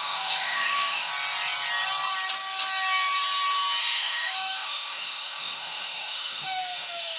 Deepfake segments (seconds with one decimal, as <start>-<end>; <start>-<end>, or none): 0.0-1.1; 3.8-7.2